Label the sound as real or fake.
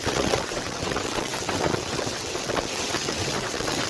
fake